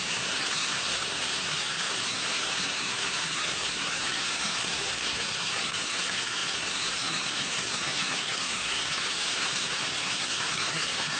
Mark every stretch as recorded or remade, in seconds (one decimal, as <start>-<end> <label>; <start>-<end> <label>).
0.0-11.2 remade